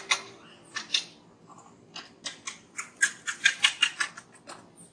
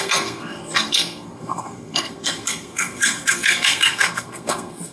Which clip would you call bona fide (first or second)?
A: first